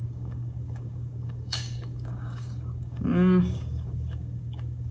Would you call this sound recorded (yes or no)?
no